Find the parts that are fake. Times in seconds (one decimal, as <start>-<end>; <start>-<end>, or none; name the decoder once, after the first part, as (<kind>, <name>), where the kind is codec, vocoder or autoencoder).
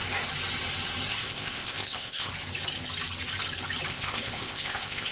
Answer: 1.1-2.3 (codec, ZipCodec); 3.9-5.1